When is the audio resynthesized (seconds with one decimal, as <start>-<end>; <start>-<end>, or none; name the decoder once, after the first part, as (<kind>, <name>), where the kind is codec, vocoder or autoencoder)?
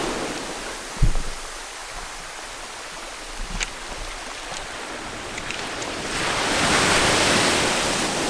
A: none